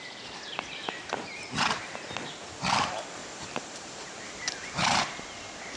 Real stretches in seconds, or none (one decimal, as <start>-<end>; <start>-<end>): 0.0-3.2; 5.0-5.8